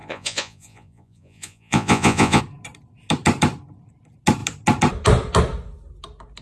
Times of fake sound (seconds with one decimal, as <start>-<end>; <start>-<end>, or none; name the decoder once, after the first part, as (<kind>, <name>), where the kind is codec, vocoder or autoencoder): 0.0-2.4 (vocoder, Vocos)